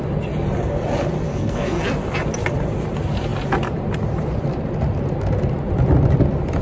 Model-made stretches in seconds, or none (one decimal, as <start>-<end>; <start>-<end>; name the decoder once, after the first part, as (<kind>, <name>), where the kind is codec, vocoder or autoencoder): 1.3-1.8 (codec, SNAC)